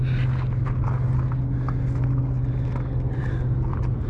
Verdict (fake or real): real